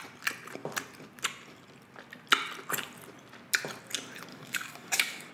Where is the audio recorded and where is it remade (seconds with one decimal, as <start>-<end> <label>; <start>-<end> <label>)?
0.0-4.3 recorded; 4.3-5.3 remade